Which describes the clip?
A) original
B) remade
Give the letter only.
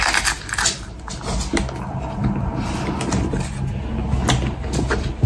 A